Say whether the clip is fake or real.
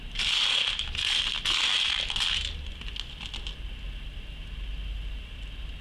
real